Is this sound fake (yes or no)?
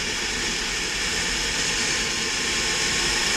no